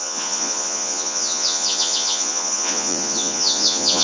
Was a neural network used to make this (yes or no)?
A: yes